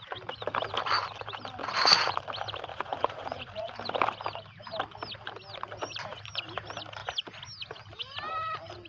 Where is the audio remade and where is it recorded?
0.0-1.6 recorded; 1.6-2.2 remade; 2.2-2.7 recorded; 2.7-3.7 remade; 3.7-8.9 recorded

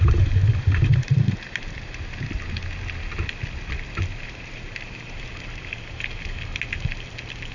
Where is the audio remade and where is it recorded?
0.0-2.3 remade; 2.3-4.1 recorded; 4.1-5.2 remade; 5.2-7.5 recorded

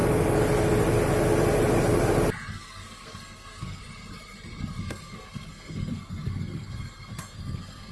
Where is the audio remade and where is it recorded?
0.0-2.5 recorded; 2.5-3.8 remade; 3.8-4.8 recorded; 4.8-7.9 remade

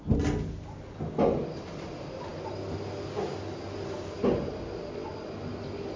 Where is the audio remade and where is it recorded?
0.0-6.0 recorded

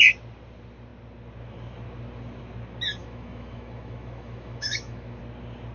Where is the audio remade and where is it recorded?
0.0-3.0 recorded; 3.0-5.2 remade; 5.2-5.7 recorded